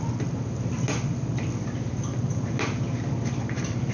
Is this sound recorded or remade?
recorded